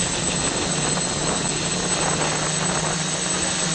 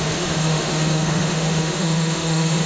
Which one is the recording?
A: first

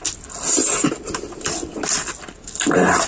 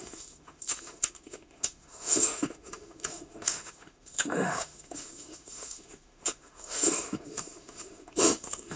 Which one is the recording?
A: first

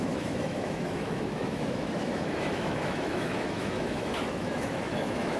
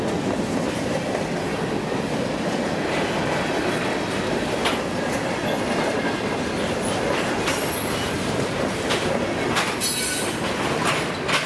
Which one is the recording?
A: second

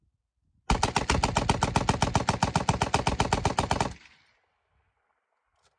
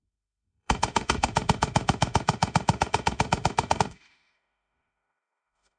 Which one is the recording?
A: first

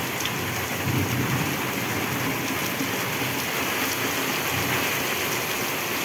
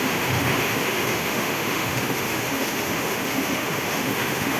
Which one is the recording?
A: first